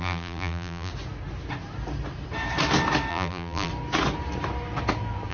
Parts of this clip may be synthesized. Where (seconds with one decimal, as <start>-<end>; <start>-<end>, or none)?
0.0-0.9; 3.1-3.7